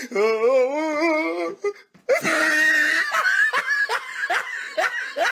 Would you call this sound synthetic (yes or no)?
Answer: no